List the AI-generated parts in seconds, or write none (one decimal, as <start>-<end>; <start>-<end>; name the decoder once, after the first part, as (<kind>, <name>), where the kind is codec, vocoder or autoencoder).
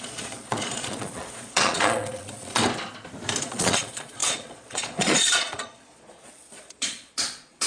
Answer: 0.0-2.6 (vocoder, Vocos); 3.4-7.7